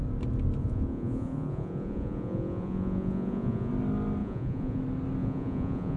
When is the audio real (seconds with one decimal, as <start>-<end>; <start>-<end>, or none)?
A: 0.0-0.6; 3.7-4.2; 4.8-5.2